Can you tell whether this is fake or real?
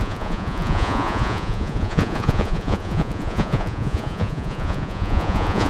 fake